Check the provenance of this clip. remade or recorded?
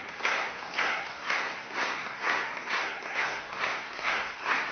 remade